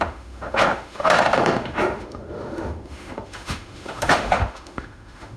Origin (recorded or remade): remade